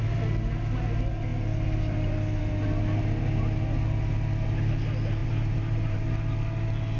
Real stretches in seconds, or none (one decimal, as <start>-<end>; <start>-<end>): 0.0-5.2; 6.1-7.0